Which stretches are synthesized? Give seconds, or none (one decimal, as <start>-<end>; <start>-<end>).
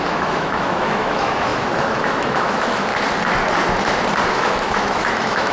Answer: 0.0-2.9; 4.3-5.5